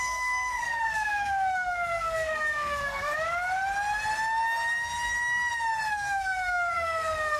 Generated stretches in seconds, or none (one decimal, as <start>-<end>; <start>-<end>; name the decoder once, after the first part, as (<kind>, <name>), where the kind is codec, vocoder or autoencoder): 0.0-3.1 (codec, SNAC); 5.9-7.4